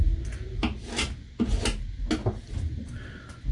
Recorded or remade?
recorded